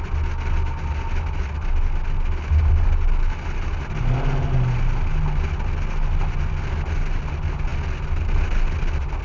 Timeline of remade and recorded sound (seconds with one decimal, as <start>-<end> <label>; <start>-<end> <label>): 0.0-9.2 recorded

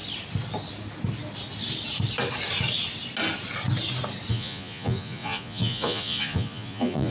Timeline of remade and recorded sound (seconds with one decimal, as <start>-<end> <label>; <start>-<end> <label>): 0.0-4.3 recorded; 4.3-7.1 remade

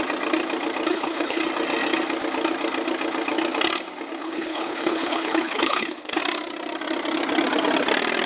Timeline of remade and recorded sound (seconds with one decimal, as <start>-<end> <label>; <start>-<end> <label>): 0.0-0.9 recorded; 0.9-1.4 remade; 1.4-4.2 recorded; 4.2-6.2 remade; 6.2-8.3 recorded

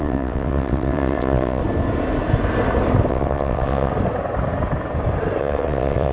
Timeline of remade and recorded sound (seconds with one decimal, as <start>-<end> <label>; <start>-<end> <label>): 0.0-1.6 remade; 1.6-3.1 recorded; 3.1-3.9 remade; 3.9-5.4 recorded; 5.4-6.1 remade

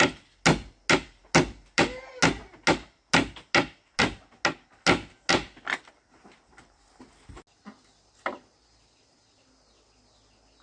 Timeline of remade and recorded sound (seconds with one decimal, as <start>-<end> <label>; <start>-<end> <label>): 0.0-10.6 recorded